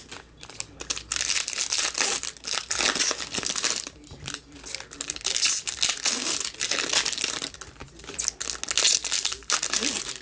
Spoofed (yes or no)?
no